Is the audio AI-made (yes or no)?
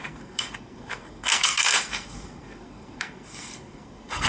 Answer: yes